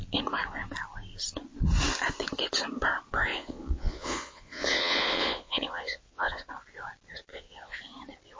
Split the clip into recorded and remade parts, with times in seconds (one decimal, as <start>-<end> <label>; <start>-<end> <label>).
0.0-3.3 recorded; 3.3-6.5 remade; 6.5-7.3 recorded; 7.3-7.8 remade; 7.8-8.4 recorded

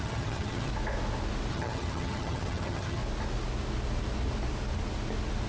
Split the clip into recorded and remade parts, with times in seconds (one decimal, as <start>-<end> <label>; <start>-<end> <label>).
0.0-0.7 remade; 0.7-1.5 recorded; 1.5-3.0 remade; 3.0-5.5 recorded